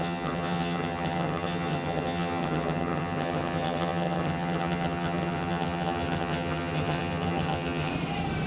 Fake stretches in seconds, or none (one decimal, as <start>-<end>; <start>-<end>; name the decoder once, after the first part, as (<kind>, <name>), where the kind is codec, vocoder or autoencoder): 0.0-7.9 (vocoder, HiFi-GAN)